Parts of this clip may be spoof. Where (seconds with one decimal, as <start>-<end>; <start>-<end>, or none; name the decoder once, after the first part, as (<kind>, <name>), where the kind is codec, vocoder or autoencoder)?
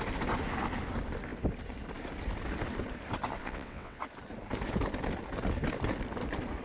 3.4-4.0 (vocoder, WaveNeXt)